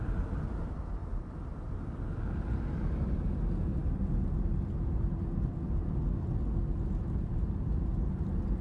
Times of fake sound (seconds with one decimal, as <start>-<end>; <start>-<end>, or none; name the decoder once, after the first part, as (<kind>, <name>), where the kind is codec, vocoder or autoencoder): 1.0-2.0 (vocoder, BigVGAN v2)